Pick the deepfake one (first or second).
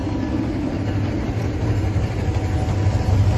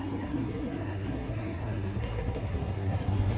second